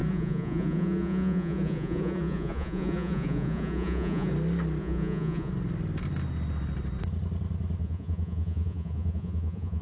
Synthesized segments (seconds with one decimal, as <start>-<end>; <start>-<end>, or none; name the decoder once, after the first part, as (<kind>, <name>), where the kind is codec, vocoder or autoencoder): 0.0-4.3 (vocoder, Vocos); 4.8-5.5; 7.8-9.8